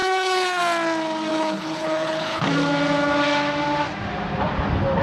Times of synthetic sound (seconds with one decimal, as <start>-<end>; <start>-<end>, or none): 0.0-0.6; 1.3-2.4